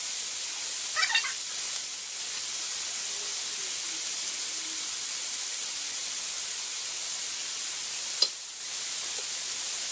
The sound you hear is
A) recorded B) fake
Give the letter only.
A